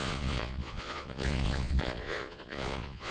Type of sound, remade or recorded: remade